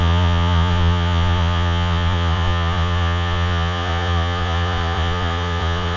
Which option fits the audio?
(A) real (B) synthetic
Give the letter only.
B